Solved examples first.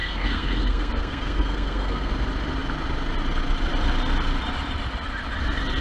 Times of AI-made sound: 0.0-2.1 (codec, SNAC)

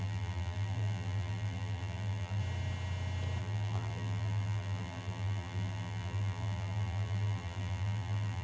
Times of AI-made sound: 0.0-2.4 (vocoder, BigVGAN v2); 3.4-8.4

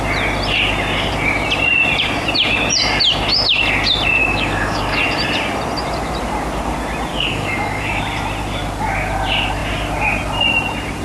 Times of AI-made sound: 4.2-5.0 (codec, DAC); 7.1-8.0

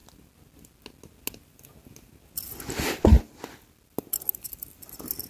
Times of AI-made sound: none

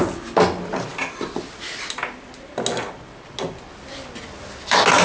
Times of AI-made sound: none